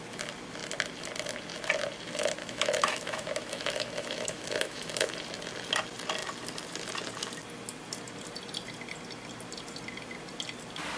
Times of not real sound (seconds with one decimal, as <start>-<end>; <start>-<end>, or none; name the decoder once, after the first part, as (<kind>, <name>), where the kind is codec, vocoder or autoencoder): 2.4-5.1 (autoencoder, DAC-VAE)